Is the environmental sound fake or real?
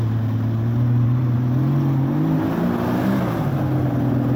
real